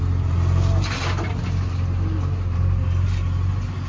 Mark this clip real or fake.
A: real